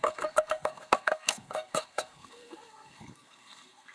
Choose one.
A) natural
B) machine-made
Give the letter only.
B